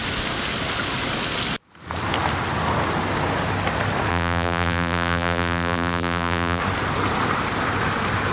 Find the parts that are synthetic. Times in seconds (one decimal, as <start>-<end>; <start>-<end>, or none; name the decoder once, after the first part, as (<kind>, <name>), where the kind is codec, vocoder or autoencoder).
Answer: 4.1-6.6 (vocoder, BigVGAN v2)